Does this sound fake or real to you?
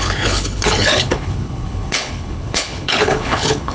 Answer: fake